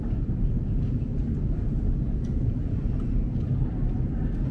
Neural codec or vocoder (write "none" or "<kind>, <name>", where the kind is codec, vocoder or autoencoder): none